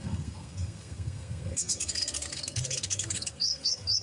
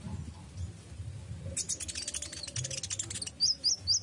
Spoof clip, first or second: first